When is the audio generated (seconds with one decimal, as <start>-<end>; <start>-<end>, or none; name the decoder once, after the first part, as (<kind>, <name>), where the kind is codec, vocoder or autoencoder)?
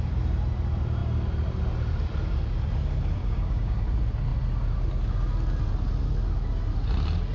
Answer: 3.2-3.8 (codec, DAC)